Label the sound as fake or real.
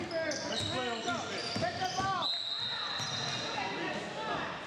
real